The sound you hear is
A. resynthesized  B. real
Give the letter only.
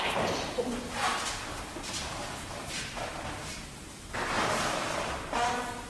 B